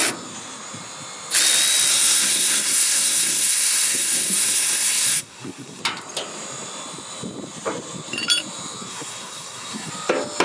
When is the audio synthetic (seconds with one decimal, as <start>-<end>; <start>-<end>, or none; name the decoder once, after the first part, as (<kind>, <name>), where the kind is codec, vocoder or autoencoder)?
1.9-5.8 (codec, SNAC); 8.9-9.9